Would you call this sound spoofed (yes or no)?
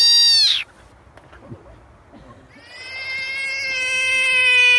no